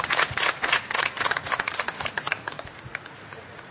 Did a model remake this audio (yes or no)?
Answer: yes